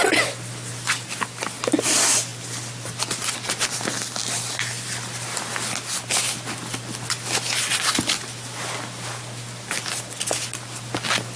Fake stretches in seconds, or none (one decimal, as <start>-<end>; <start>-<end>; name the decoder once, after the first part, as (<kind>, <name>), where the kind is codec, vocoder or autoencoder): none